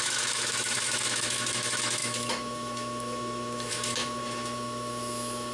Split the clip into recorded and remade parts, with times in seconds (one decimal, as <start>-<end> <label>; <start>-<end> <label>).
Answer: 0.0-5.5 remade